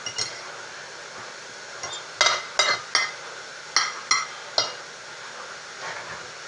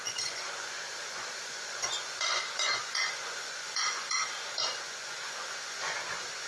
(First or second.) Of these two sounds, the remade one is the second